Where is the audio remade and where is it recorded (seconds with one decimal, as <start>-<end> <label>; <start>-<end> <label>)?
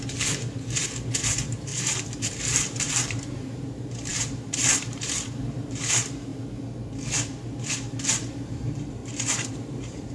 0.0-6.3 remade; 6.3-7.6 recorded; 7.6-10.1 remade